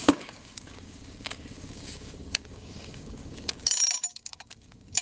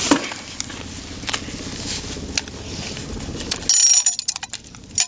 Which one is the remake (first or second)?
first